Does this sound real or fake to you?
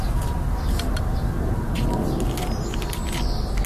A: real